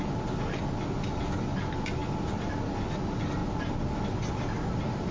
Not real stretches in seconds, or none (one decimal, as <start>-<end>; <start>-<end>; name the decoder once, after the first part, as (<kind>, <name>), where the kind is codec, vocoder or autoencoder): none